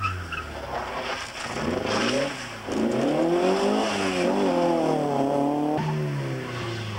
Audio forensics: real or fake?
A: real